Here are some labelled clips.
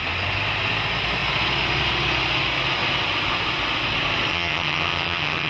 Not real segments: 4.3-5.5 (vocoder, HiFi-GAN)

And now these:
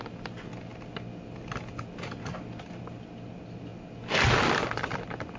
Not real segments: none

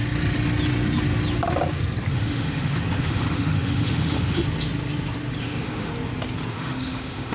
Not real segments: 2.1-4.4 (autoencoder, DAC-VAE); 5.4-5.9; 6.5-7.3

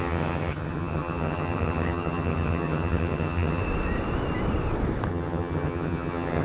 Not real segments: 0.0-3.6 (vocoder, HiFi-GAN); 5.1-6.4

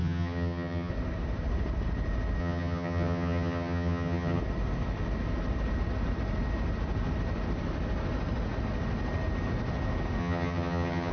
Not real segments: 0.0-0.9 (vocoder, HiFi-GAN); 2.4-4.4; 10.2-11.1